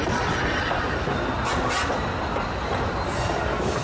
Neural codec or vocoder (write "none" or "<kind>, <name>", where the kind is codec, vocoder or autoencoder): none